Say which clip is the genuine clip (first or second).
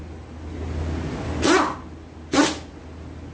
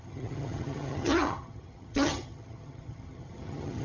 first